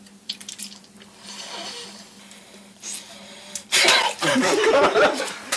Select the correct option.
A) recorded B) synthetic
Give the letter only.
B